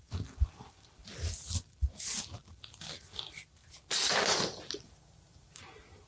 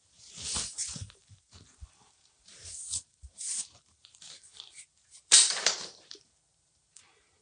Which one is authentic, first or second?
first